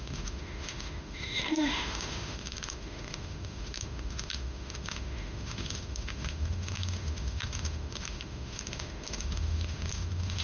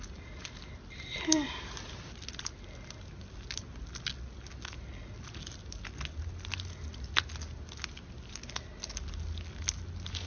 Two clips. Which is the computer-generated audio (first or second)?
first